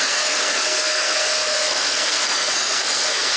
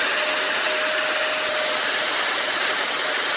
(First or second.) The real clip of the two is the second